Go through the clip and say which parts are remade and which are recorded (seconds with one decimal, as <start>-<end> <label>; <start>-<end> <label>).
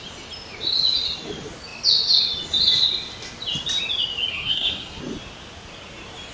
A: 0.0-4.3 recorded; 4.3-5.0 remade; 5.0-6.3 recorded